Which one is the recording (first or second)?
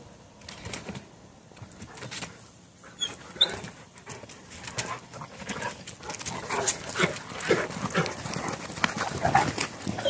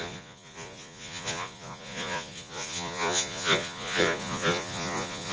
first